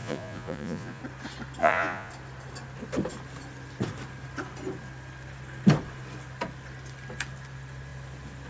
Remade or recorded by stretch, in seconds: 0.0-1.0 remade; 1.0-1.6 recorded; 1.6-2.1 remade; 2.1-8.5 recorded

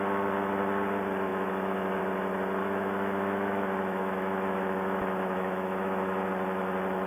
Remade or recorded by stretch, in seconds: 0.0-1.3 recorded; 1.3-2.0 remade; 2.0-2.6 recorded; 2.6-6.3 remade; 6.3-7.1 recorded